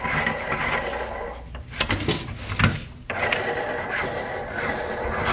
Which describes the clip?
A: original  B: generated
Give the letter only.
A